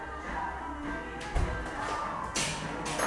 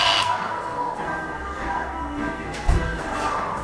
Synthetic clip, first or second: second